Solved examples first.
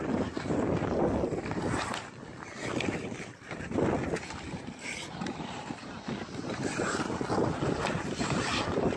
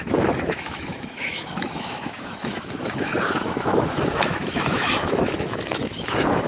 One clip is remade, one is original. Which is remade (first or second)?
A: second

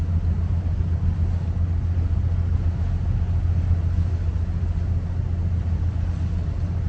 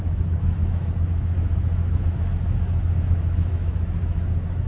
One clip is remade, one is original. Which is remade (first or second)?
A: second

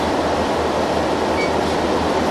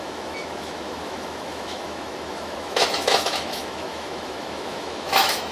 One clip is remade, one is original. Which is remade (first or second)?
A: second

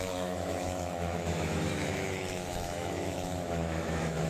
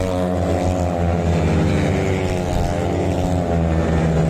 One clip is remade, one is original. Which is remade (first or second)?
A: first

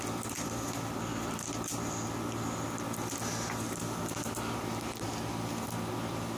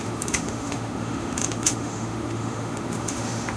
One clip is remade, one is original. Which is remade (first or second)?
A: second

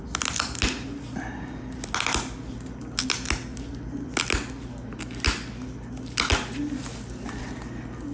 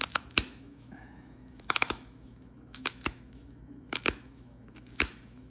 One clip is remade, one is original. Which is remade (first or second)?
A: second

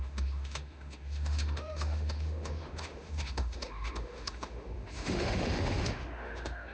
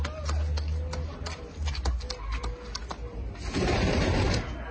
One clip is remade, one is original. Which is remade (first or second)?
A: first